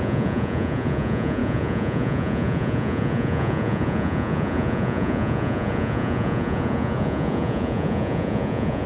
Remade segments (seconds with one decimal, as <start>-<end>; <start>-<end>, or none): 0.0-8.9